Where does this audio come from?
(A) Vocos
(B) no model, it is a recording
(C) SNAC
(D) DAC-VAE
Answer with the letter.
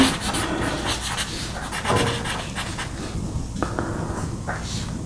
B